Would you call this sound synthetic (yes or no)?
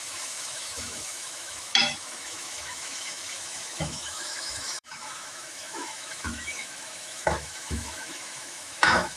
yes